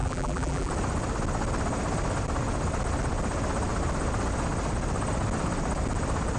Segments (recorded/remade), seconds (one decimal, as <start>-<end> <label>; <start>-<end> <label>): 0.0-0.7 remade; 0.7-6.4 recorded

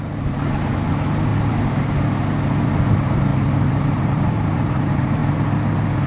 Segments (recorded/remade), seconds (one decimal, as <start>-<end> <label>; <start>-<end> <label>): 0.0-1.3 remade; 1.3-2.9 recorded; 2.9-5.2 remade; 5.2-6.1 recorded

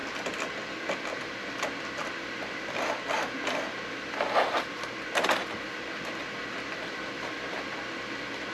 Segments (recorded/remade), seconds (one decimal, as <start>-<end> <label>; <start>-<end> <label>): 0.0-8.5 recorded

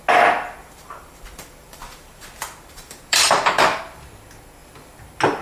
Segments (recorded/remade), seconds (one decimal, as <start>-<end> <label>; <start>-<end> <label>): 0.0-0.6 recorded; 0.6-3.8 remade; 3.8-5.4 recorded

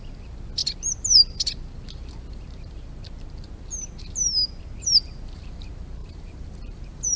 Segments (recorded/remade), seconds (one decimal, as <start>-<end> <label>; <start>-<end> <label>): 0.0-6.0 recorded; 6.0-7.2 remade

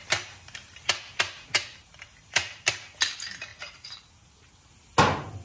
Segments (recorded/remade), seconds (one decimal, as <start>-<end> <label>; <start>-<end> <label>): 0.0-1.0 remade; 1.0-1.7 recorded; 1.7-2.7 remade; 2.7-3.5 recorded; 3.5-4.1 remade; 4.1-5.4 recorded

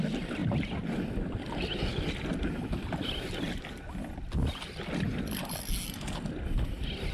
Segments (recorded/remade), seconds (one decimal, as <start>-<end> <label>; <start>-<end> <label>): 0.0-0.4 recorded; 0.4-1.0 remade; 1.0-7.1 recorded

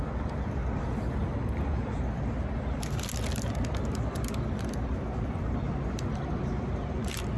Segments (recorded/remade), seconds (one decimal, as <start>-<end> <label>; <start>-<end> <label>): 0.0-0.6 remade; 0.6-5.0 recorded; 5.0-7.4 remade